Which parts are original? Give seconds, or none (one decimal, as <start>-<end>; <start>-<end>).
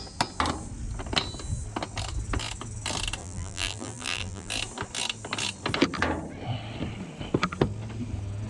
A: 0.0-3.2; 4.5-8.5